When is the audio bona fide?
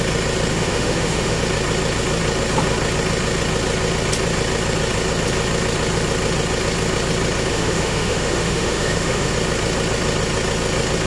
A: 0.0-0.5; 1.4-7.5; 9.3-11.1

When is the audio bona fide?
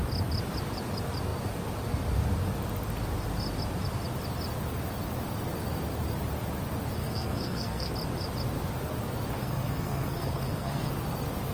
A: 0.0-7.0; 7.9-9.4; 10.9-11.5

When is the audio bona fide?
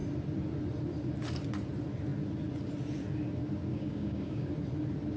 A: 0.0-3.7; 4.5-5.2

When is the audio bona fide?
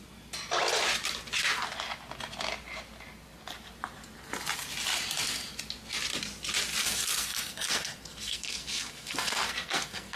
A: 0.0-6.8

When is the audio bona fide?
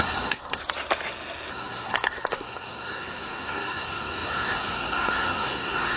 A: 0.6-1.5